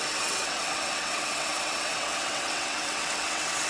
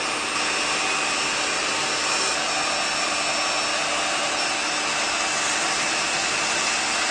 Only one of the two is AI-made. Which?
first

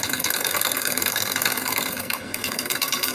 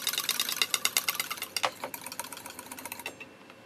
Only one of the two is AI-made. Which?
first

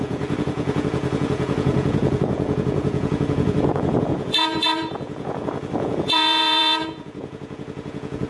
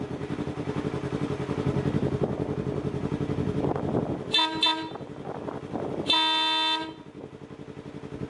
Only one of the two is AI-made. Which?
first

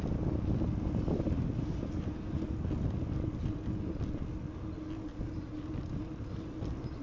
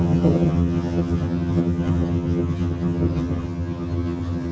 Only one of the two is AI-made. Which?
second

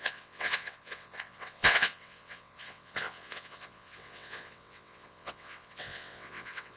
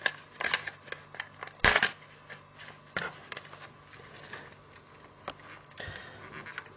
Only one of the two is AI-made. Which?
first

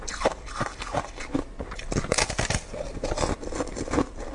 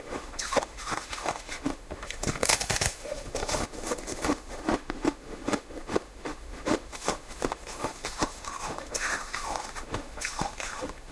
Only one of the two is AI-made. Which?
second